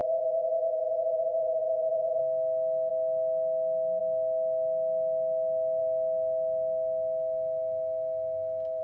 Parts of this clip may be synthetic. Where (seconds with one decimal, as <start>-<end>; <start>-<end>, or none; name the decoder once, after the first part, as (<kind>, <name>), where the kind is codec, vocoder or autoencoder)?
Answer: 0.0-2.2 (vocoder, Vocos)